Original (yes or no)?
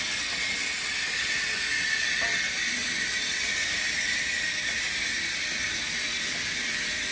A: yes